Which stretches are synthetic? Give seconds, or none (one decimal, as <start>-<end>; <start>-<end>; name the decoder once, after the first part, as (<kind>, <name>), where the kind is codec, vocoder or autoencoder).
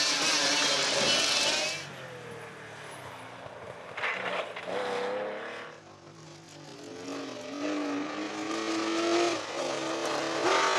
none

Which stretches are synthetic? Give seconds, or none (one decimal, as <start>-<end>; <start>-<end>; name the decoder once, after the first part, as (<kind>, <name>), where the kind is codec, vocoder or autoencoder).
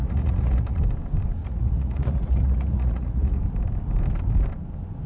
0.0-0.8 (vocoder, Vocos); 1.4-3.4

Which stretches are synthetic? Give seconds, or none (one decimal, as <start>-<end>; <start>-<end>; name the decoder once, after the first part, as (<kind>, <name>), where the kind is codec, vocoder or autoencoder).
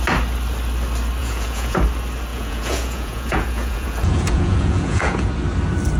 1.2-1.8 (vocoder, Vocos); 2.3-5.3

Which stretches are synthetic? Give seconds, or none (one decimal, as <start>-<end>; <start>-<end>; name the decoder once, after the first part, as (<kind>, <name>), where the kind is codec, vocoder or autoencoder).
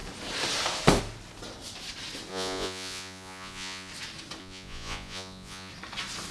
2.3-3.9 (vocoder, Vocos); 4.4-5.7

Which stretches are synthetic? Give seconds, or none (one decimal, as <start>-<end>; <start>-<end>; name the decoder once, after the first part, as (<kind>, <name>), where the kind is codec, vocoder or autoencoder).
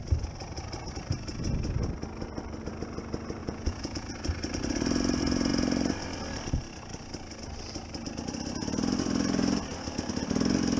3.4-4.1 (vocoder, Vocos)